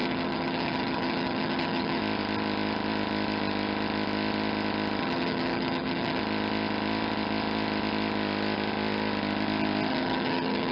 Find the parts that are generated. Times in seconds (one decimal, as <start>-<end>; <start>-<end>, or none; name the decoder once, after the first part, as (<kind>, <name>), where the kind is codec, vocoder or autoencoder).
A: 0.0-2.0 (vocoder, HiFi-GAN); 5.0-6.2; 9.9-10.7